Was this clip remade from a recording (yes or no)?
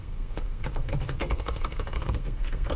yes